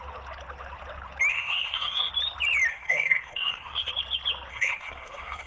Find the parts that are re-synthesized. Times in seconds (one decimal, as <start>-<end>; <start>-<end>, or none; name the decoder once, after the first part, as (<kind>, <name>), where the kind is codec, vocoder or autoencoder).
1.3-2.1 (codec, SNAC); 2.7-3.9; 4.5-5.5